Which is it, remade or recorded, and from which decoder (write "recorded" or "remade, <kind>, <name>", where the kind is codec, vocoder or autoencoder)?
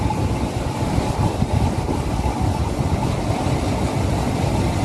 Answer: recorded